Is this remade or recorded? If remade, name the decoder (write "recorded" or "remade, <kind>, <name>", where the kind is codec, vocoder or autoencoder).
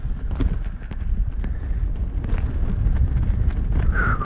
recorded